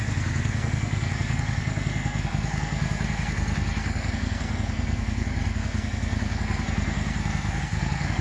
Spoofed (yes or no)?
yes